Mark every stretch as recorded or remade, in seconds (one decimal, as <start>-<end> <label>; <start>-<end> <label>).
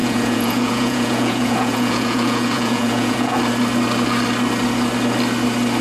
0.0-3.4 remade; 3.4-5.8 recorded